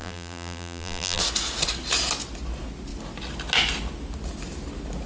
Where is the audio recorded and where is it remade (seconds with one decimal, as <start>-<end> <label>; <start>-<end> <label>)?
0.0-1.2 remade; 1.2-5.1 recorded